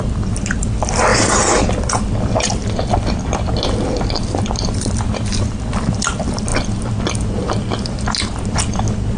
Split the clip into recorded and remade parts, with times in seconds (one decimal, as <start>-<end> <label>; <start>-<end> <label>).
0.0-1.1 remade; 1.1-4.4 recorded; 4.4-6.5 remade; 6.5-9.2 recorded